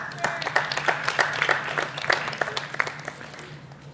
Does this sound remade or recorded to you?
recorded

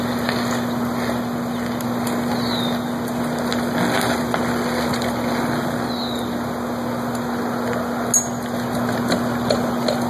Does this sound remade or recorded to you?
recorded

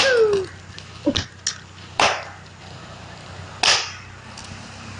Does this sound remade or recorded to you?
recorded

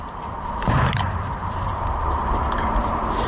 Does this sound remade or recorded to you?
remade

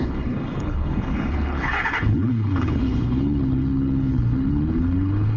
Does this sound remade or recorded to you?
remade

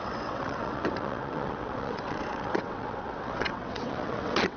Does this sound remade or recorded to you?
remade